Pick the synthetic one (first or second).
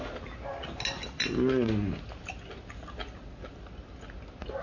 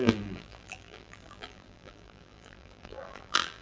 second